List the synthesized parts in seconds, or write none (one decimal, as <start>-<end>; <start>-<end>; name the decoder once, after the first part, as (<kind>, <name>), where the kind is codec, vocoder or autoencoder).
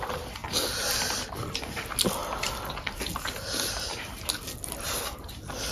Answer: none